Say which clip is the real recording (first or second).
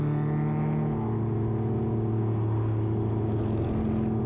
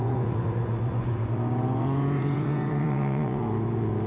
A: first